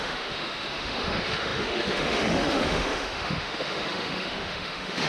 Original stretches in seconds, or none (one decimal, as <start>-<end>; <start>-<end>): none